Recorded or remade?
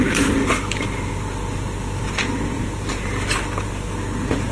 recorded